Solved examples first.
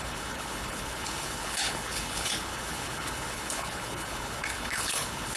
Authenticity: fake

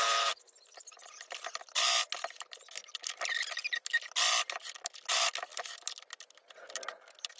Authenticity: real